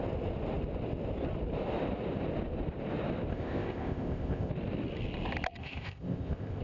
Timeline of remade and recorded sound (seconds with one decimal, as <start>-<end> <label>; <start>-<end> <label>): 0.0-3.3 recorded; 3.3-4.5 remade; 4.5-5.6 recorded; 5.6-6.6 remade